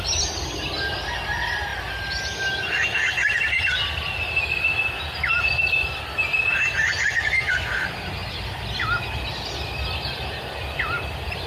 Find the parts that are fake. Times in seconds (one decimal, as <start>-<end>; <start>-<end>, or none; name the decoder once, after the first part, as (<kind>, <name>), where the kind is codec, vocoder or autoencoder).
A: none